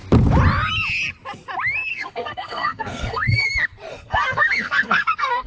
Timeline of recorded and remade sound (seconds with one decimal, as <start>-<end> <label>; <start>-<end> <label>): 0.0-1.9 recorded; 1.9-3.5 remade; 3.5-3.9 recorded; 3.9-5.5 remade